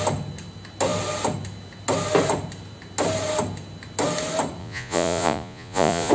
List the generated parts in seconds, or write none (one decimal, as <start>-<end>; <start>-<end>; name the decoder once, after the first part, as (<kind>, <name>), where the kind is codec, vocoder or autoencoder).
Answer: 4.6-6.1 (vocoder, Vocos)